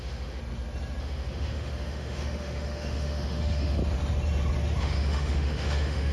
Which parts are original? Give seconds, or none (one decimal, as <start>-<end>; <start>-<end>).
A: 0.4-1.0; 3.8-4.8